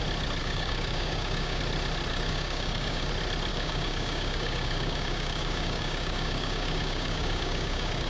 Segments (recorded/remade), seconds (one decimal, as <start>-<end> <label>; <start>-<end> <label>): 0.0-0.4 recorded; 0.4-1.6 remade; 1.6-2.1 recorded; 2.1-3.1 remade; 3.1-3.5 recorded; 3.5-8.1 remade